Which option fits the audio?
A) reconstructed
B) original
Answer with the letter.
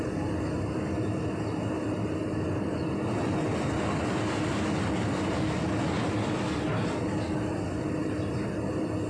B